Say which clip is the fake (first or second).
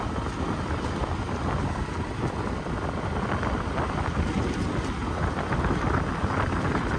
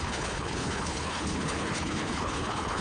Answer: second